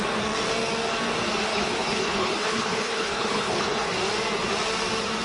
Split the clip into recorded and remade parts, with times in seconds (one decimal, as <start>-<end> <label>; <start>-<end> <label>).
0.0-1.5 recorded; 1.5-3.9 remade; 3.9-5.2 recorded